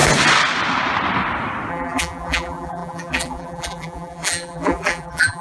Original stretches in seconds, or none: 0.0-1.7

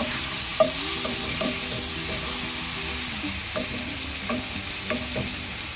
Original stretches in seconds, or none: 0.0-5.8

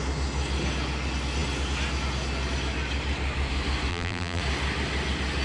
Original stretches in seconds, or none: 0.0-3.9; 4.4-5.4

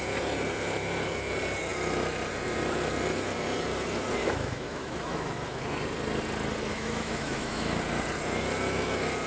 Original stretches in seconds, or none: 0.0-4.2; 5.6-6.7; 7.8-9.3